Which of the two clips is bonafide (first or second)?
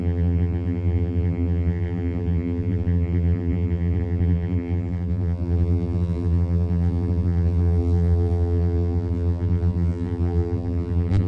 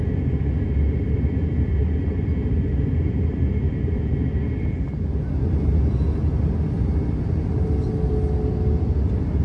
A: second